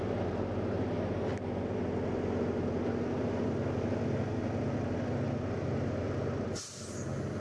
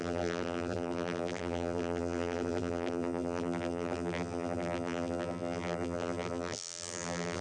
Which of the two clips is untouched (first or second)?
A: first